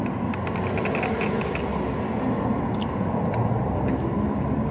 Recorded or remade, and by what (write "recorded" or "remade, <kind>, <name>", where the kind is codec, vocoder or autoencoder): recorded